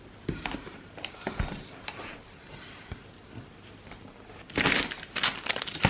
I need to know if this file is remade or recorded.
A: recorded